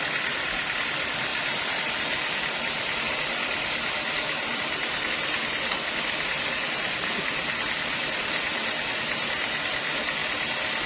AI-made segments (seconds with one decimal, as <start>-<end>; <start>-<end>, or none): none